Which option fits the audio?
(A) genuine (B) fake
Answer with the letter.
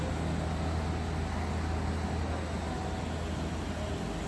A